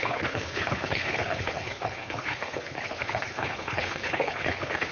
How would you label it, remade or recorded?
remade